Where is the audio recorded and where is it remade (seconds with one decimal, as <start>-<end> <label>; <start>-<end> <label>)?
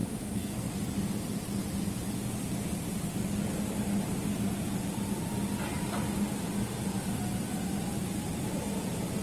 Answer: 0.0-0.7 remade; 0.7-9.2 recorded